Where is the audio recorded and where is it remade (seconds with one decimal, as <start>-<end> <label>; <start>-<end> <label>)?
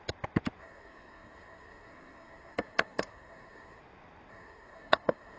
0.0-0.6 recorded; 0.6-3.8 remade; 3.8-4.3 recorded; 4.3-5.4 remade